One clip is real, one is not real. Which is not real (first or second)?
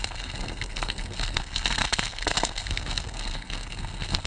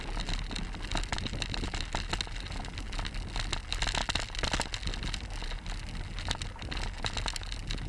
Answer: first